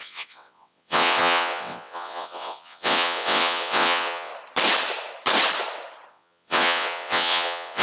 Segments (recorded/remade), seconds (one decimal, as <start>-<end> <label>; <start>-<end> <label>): 0.0-4.3 remade; 4.3-6.1 recorded; 6.1-7.8 remade